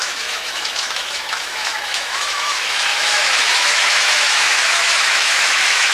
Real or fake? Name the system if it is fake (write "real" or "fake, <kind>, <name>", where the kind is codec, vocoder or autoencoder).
fake, autoencoder, DAC-VAE